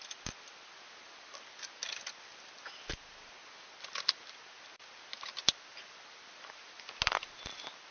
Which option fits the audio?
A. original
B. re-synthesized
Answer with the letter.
A